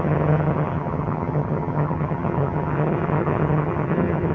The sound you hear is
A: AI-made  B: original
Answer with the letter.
A